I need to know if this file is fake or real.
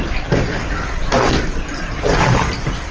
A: real